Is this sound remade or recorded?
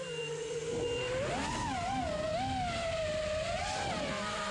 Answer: recorded